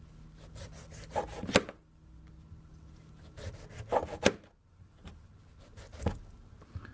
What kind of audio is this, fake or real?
real